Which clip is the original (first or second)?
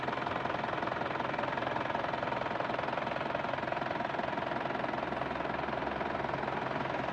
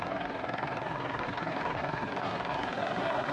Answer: first